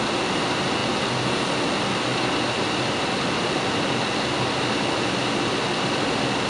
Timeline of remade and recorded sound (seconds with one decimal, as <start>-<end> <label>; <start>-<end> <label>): 0.0-6.5 recorded